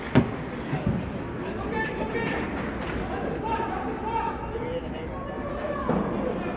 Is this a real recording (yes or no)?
yes